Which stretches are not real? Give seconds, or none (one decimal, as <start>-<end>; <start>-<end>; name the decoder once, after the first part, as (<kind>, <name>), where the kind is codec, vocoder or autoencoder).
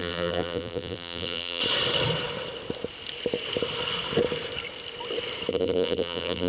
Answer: 0.0-1.6 (vocoder, BigVGAN v2); 5.5-6.5